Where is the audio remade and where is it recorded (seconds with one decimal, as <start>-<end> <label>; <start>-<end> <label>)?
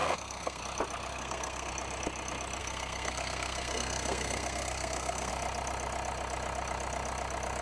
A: 0.0-0.6 remade; 0.6-1.1 recorded; 1.1-1.7 remade; 1.7-2.6 recorded; 2.6-5.3 remade; 5.3-7.6 recorded